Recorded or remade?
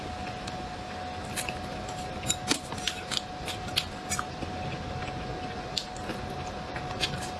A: recorded